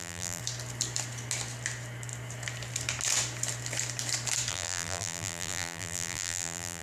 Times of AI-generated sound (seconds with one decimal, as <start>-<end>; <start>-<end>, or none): 0.0-0.4; 4.5-6.8